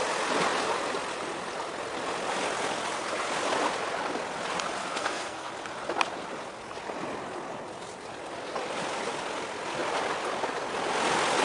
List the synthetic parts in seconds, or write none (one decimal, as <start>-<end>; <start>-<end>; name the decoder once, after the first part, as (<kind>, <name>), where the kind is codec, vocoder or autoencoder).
4.8-5.5 (codec, SNAC)